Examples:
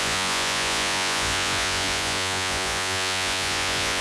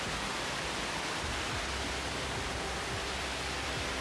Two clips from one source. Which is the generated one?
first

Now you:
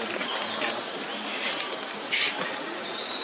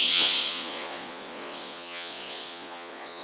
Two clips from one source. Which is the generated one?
second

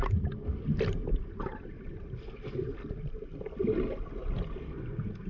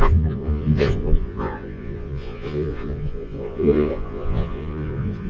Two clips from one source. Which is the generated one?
second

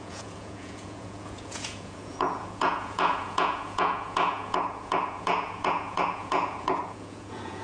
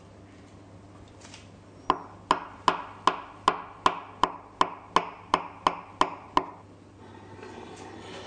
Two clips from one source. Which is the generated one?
first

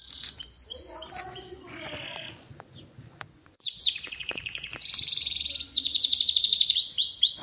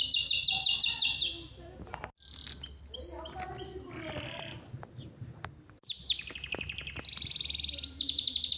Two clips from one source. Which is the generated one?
first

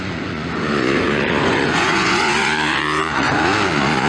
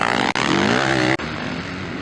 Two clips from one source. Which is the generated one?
first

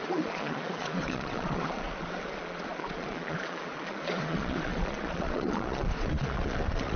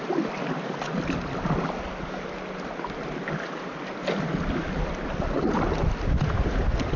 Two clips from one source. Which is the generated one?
first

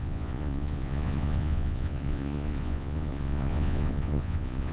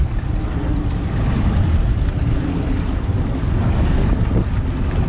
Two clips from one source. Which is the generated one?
first